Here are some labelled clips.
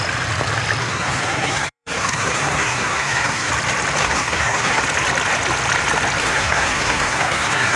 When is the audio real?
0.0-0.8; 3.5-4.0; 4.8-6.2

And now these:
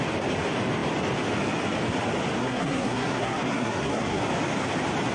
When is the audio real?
0.0-2.4; 4.2-5.1

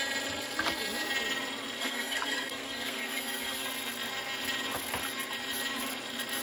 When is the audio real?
0.0-1.8; 3.7-6.4

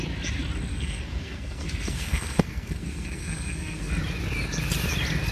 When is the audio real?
0.0-0.7; 3.9-5.3

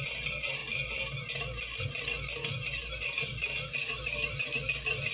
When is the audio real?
0.0-5.1